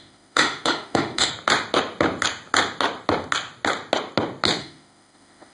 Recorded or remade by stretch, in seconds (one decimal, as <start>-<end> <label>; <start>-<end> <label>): 0.0-1.3 remade; 1.3-4.6 recorded; 4.6-5.5 remade